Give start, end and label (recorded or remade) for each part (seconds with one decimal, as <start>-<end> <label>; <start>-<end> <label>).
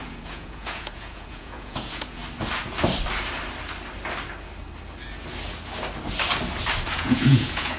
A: 0.0-2.2 remade; 2.2-6.9 recorded; 6.9-7.8 remade